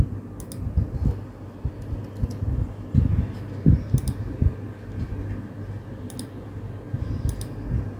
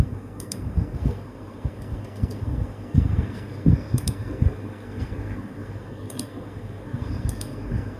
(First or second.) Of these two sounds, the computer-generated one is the second